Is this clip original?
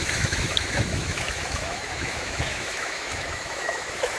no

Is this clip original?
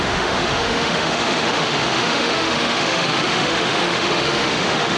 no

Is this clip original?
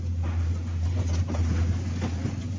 yes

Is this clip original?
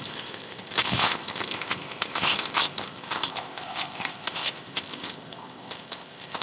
no